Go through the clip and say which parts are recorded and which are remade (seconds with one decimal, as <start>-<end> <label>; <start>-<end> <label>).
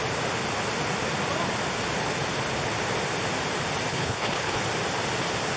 0.0-3.9 recorded; 3.9-4.6 remade; 4.6-5.6 recorded